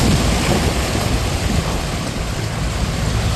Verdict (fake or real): real